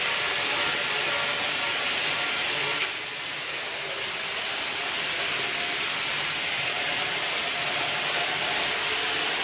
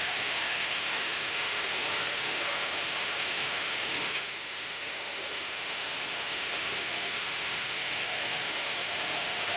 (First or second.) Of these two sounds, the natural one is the first